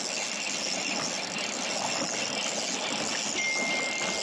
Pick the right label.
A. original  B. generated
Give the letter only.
A